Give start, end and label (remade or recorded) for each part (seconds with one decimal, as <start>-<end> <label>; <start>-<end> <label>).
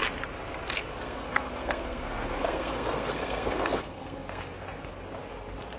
0.0-0.9 recorded; 0.9-4.4 remade; 4.4-5.8 recorded